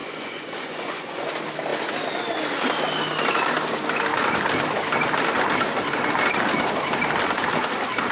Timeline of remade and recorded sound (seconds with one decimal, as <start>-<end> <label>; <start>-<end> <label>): 0.0-1.2 remade; 1.2-8.1 recorded